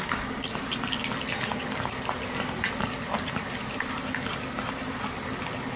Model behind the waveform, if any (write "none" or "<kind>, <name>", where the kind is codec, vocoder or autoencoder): none